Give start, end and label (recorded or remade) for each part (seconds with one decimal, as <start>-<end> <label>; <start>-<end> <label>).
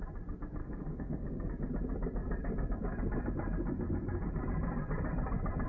0.0-0.6 recorded; 0.6-1.5 remade; 1.5-5.7 recorded